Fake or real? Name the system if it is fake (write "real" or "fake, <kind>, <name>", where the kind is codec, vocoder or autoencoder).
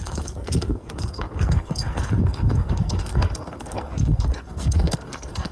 fake, codec, SNAC